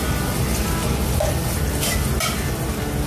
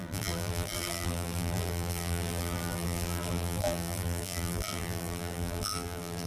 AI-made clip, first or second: second